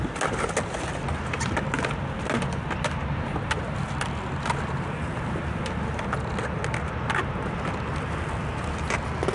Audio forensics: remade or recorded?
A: recorded